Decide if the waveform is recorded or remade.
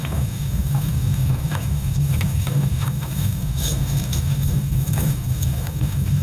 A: remade